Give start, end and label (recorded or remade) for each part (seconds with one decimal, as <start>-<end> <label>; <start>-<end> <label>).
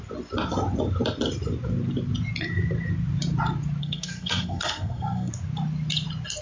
0.0-3.8 recorded; 3.8-5.3 remade; 5.3-6.4 recorded